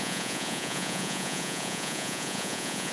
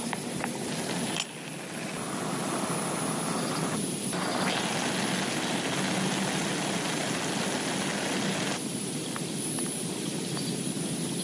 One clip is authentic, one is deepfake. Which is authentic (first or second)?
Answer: second